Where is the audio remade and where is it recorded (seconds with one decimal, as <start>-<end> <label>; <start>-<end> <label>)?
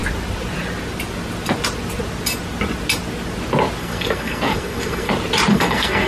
0.0-3.8 recorded; 3.8-5.1 remade; 5.1-5.5 recorded; 5.5-6.1 remade